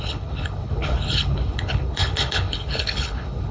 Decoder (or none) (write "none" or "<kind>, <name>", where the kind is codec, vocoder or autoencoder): codec, HILCodec